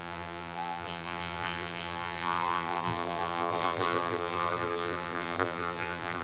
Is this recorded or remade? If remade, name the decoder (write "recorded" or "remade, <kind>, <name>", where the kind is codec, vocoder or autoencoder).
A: remade, vocoder, BigVGAN v2